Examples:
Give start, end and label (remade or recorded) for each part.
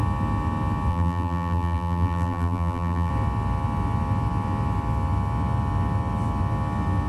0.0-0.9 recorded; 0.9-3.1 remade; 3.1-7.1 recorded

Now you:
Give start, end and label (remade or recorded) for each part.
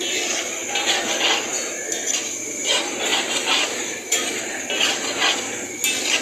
0.0-3.1 recorded; 3.1-4.3 remade; 4.3-6.2 recorded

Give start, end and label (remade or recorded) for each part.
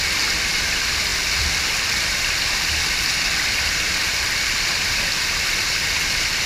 0.0-6.5 remade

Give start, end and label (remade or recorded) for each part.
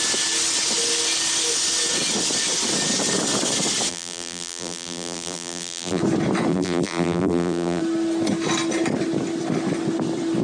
0.0-3.9 recorded; 3.9-6.0 remade; 6.0-6.5 recorded; 6.5-7.8 remade; 7.8-10.4 recorded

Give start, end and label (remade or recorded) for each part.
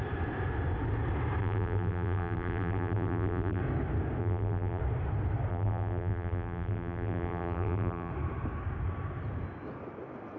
0.0-1.4 recorded; 1.4-3.6 remade; 3.6-4.2 recorded; 4.2-4.8 remade; 4.8-5.5 recorded; 5.5-8.1 remade; 8.1-10.4 recorded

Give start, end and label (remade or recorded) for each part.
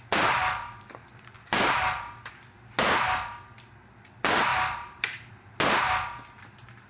0.0-4.5 recorded; 4.5-5.6 remade; 5.6-6.9 recorded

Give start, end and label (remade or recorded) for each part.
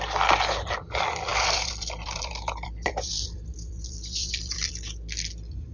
0.0-1.3 recorded; 1.3-4.7 remade; 4.7-5.7 recorded